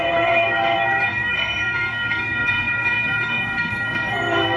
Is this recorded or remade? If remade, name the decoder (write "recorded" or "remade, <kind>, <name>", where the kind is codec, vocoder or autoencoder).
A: remade, codec, SNAC